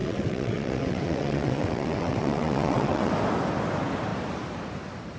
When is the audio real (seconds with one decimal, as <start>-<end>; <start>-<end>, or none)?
3.1-5.2